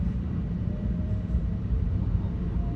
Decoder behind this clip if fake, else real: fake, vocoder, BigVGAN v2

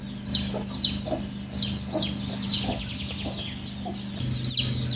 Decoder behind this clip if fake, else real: real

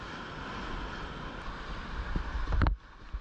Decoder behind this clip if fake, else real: real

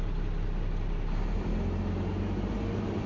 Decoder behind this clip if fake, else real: real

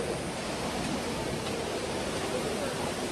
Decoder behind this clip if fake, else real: real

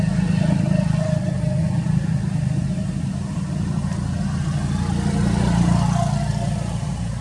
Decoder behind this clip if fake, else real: real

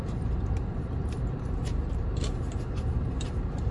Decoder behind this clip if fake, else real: fake, vocoder, BigVGAN v2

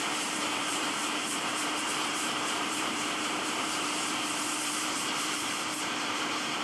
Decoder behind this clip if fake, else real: fake, vocoder, BigVGAN v2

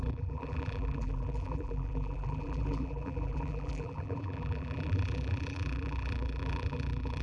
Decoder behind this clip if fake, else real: fake, vocoder, BigVGAN v2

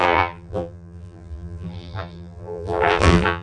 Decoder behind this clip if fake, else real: fake, vocoder, BigVGAN v2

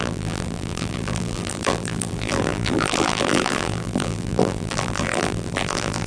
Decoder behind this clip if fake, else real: fake, vocoder, BigVGAN v2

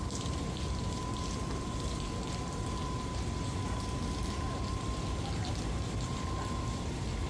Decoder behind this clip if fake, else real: fake, vocoder, BigVGAN v2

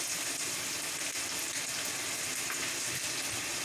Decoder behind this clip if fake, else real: real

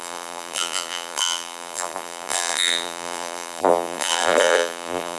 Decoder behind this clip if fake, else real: fake, vocoder, BigVGAN v2